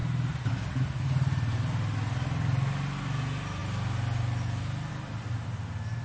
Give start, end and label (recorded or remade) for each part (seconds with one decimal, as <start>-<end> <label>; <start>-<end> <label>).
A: 0.0-6.0 recorded